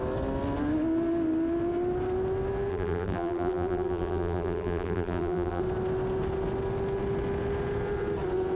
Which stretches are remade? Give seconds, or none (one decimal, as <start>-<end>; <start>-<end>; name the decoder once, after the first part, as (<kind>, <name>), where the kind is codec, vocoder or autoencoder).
2.7-5.6 (vocoder, BigVGAN v2)